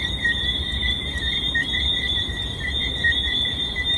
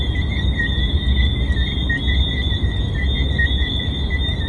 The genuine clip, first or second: second